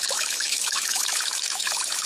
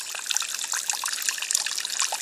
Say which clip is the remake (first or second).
first